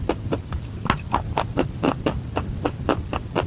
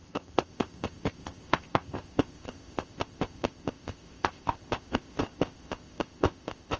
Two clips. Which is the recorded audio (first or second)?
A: first